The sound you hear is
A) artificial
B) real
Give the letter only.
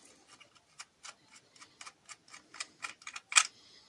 B